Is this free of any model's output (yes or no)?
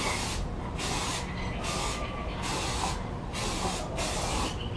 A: yes